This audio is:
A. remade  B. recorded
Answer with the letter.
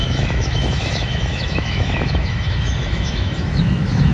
A